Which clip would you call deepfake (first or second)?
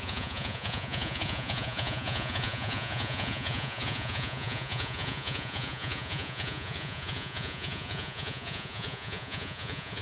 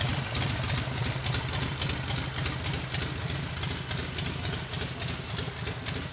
first